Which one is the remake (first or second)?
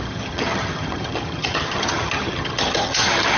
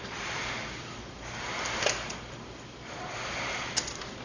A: first